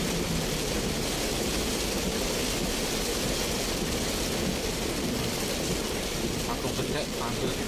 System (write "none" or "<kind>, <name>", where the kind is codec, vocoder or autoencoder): none